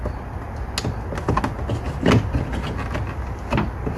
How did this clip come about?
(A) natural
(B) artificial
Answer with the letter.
A